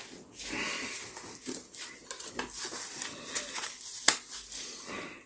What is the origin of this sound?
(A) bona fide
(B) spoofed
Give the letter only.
A